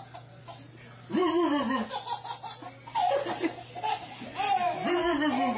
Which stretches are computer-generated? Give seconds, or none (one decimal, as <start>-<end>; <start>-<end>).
none

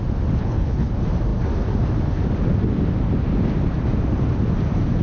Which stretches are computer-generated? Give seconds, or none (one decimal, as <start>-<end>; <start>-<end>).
0.4-0.9